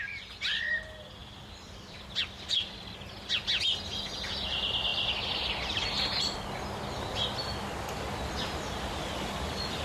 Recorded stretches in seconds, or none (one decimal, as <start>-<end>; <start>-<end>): 0.0-1.2; 2.2-9.8